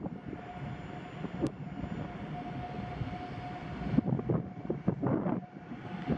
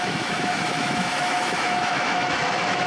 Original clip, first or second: first